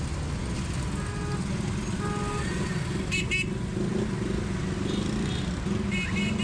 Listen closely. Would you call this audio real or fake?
real